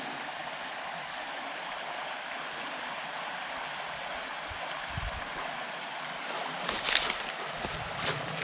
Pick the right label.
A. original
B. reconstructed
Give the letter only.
A